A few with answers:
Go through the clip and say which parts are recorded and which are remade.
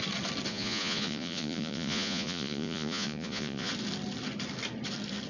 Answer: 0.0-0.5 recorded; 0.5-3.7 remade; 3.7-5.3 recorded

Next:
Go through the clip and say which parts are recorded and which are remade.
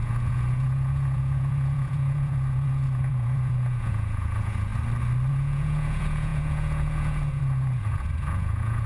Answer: 0.0-4.7 remade; 4.7-5.3 recorded; 5.3-8.9 remade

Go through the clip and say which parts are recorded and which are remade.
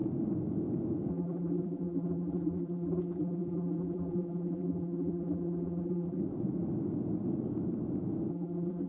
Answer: 0.0-1.1 recorded; 1.1-6.2 remade; 6.2-8.3 recorded; 8.3-8.9 remade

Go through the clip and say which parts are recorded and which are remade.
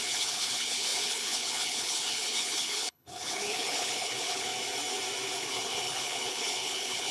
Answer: 0.0-4.5 remade; 4.5-5.4 recorded; 5.4-7.1 remade